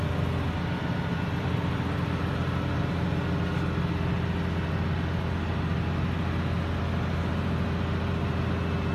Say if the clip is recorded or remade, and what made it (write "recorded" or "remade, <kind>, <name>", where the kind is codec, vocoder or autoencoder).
recorded